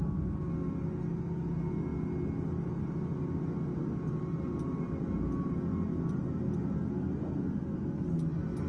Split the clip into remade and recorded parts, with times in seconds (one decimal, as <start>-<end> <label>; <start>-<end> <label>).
0.0-8.7 recorded